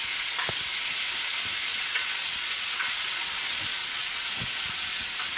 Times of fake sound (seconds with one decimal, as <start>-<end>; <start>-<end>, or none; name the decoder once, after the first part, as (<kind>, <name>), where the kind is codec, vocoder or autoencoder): 1.7-3.4 (vocoder, WaveNeXt); 3.8-4.5